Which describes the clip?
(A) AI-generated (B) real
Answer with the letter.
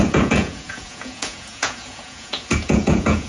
A